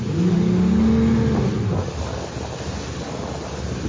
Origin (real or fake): real